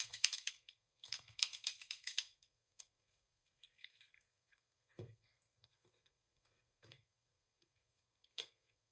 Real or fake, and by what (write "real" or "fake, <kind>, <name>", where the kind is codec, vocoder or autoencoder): fake, codec, SNAC